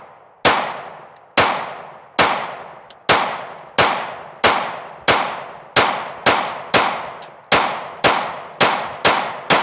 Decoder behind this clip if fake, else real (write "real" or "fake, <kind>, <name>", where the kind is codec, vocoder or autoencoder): real